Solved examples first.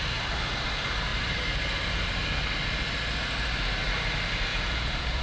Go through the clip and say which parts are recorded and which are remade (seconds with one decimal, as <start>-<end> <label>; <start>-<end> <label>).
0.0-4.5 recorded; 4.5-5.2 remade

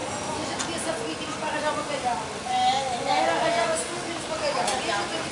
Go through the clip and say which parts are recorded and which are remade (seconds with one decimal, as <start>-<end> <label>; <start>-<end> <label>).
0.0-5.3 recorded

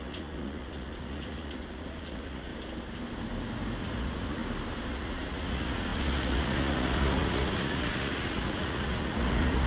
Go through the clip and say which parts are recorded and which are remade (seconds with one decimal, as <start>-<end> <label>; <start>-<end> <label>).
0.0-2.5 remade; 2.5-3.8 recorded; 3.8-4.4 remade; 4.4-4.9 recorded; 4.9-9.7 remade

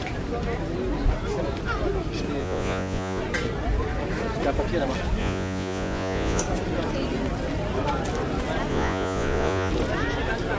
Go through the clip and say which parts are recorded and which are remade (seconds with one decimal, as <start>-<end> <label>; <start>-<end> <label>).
0.0-2.4 recorded; 2.4-3.2 remade; 3.2-5.2 recorded; 5.2-6.4 remade; 6.4-8.7 recorded; 8.7-9.7 remade; 9.7-10.6 recorded